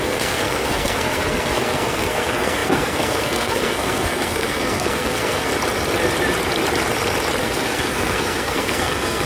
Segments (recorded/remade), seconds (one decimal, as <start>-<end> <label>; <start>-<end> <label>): 0.0-5.5 remade; 5.5-7.4 recorded; 7.4-9.3 remade